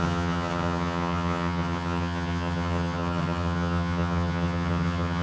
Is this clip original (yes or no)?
no